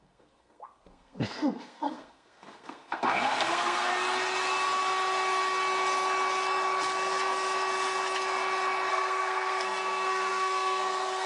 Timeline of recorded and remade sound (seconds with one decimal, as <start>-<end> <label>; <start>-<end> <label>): 0.0-3.9 remade; 3.9-8.9 recorded; 8.9-11.3 remade